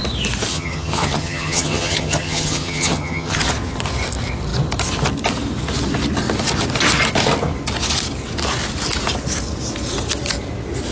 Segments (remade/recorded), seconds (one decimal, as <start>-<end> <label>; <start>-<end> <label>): 0.0-0.5 recorded; 0.5-3.4 remade; 3.4-10.9 recorded